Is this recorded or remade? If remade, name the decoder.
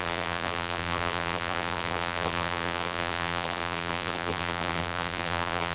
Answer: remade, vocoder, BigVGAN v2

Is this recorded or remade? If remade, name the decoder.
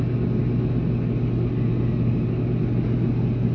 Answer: recorded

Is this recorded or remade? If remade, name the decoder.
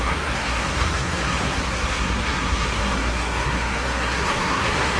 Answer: remade, codec, SNAC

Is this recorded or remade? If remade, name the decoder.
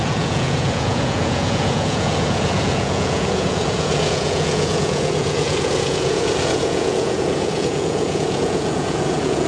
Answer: remade, vocoder, Vocos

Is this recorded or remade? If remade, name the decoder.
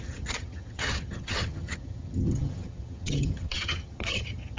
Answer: remade, vocoder, HiFi-GAN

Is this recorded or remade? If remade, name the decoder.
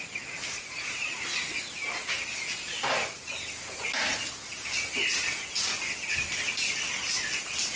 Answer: recorded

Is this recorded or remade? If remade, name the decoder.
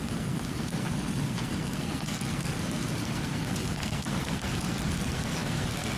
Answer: remade, codec, SNAC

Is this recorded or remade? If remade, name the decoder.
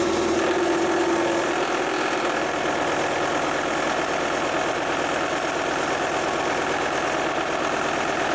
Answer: recorded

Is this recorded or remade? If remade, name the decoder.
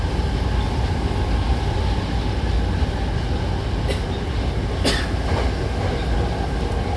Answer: recorded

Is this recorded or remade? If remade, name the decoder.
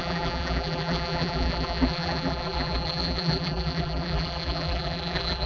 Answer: remade, vocoder, BigVGAN v2